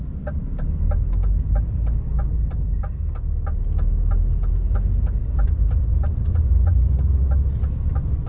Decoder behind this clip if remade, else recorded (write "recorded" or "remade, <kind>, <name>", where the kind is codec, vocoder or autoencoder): recorded